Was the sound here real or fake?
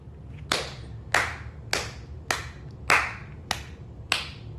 real